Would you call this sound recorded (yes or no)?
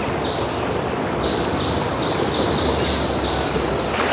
yes